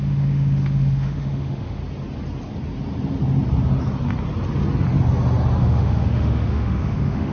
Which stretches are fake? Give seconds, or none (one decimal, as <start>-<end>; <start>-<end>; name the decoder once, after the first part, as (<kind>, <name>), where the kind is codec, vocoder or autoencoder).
0.0-1.8 (autoencoder, DAC-VAE); 5.6-7.3